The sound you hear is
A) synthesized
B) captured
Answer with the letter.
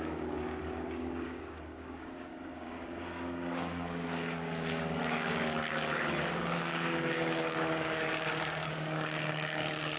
A